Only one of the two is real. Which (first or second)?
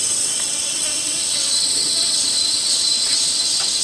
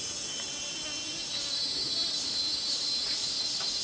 second